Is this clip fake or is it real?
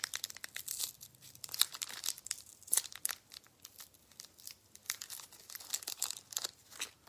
real